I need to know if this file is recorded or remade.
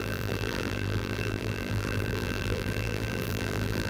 remade